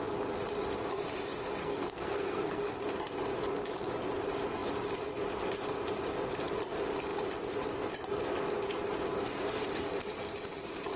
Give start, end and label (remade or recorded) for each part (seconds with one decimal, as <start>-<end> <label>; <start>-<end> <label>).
0.0-1.6 recorded; 1.6-2.7 remade; 2.7-11.0 recorded